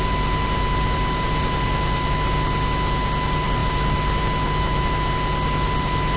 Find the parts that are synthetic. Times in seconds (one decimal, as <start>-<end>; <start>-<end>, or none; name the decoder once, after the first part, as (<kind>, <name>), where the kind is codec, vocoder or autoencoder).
none